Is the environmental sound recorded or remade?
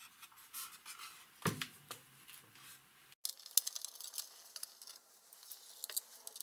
recorded